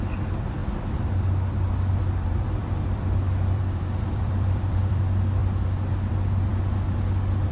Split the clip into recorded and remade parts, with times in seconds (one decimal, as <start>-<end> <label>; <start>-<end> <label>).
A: 0.0-0.6 recorded; 0.6-5.0 remade; 5.0-7.5 recorded

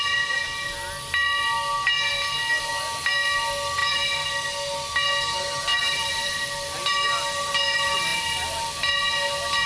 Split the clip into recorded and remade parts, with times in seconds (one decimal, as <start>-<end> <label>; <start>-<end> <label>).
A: 0.0-3.8 recorded; 3.8-4.3 remade; 4.3-5.7 recorded; 5.7-6.3 remade; 6.3-9.7 recorded

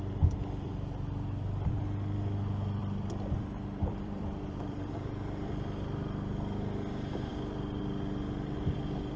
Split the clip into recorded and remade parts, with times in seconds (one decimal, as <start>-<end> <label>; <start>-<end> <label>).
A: 0.0-2.8 recorded; 2.8-4.9 remade; 4.9-9.2 recorded

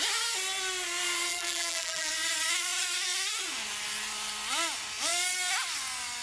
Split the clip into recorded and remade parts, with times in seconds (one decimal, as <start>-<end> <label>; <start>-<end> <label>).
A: 0.0-1.3 recorded; 1.3-2.1 remade; 2.1-6.2 recorded

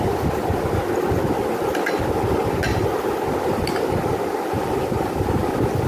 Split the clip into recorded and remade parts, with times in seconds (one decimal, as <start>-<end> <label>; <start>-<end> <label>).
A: 0.0-4.6 recorded; 4.6-5.4 remade; 5.4-5.9 recorded

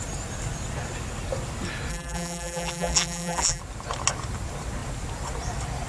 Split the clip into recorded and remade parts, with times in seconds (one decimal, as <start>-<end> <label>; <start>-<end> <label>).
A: 0.0-1.9 recorded; 1.9-3.6 remade; 3.6-5.9 recorded

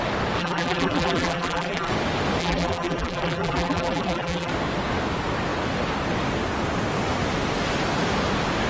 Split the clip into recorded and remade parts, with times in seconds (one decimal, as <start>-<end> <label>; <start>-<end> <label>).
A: 0.0-0.4 recorded; 0.4-1.9 remade; 1.9-2.4 recorded; 2.4-4.5 remade; 4.5-8.7 recorded

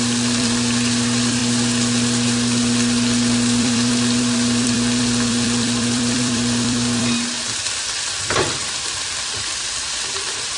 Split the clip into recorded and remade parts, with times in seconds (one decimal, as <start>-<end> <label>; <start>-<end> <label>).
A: 0.0-1.4 remade; 1.4-3.6 recorded; 3.6-10.6 remade